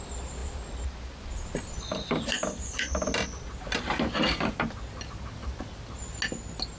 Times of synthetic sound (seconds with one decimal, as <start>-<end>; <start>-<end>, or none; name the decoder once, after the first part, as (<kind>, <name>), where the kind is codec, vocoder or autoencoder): none